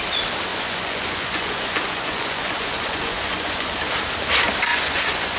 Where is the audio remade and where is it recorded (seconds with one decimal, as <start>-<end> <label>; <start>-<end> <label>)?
0.0-0.5 recorded; 0.5-3.7 remade; 3.7-4.7 recorded; 4.7-5.4 remade